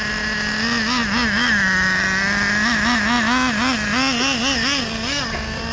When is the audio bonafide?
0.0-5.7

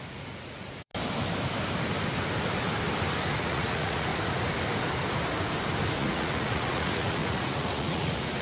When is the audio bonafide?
0.9-3.3; 4.1-6.0

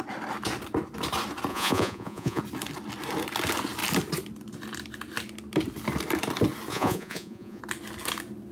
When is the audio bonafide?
0.0-1.5; 2.4-6.7; 7.6-8.5